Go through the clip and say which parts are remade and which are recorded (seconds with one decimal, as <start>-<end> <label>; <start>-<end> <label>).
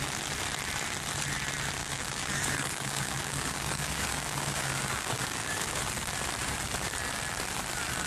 0.0-1.8 recorded; 1.8-5.8 remade; 5.8-8.1 recorded